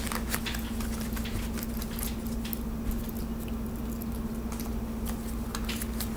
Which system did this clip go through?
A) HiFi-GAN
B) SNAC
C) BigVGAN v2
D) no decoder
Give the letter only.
D